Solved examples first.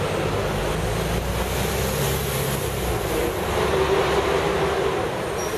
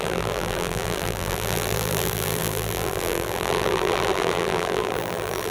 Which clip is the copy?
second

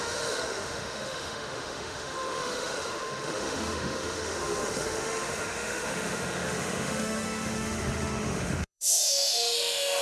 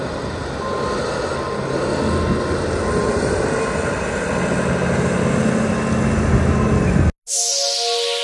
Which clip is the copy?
first